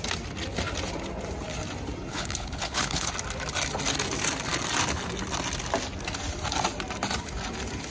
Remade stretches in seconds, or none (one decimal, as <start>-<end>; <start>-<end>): 2.1-3.1